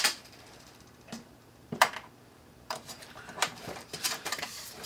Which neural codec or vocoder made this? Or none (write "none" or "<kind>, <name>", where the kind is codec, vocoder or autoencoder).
vocoder, BigVGAN v2